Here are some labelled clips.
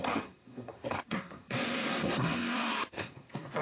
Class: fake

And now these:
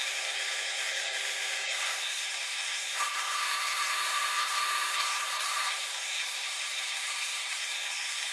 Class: fake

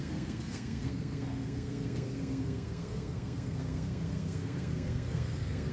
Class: fake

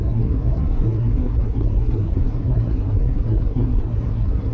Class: fake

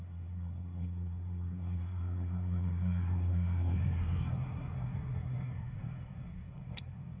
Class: fake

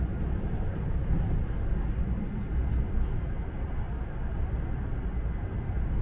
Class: real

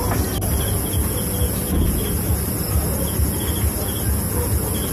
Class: real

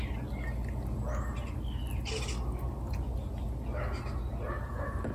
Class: real